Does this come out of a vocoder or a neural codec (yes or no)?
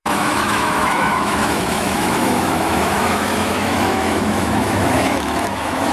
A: yes